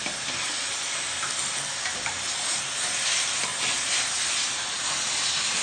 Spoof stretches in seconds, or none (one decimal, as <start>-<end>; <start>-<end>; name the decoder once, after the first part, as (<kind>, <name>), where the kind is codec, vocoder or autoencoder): none